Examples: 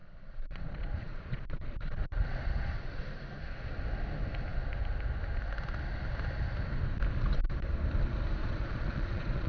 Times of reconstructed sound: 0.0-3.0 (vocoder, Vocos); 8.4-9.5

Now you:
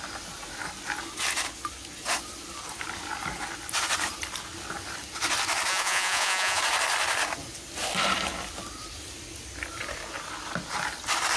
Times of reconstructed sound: 5.7-6.6 (vocoder, Vocos)